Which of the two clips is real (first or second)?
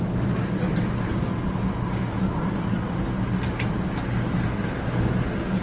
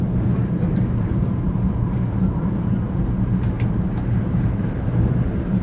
first